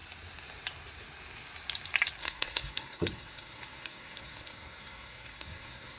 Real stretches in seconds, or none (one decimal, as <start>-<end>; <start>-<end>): 0.0-2.2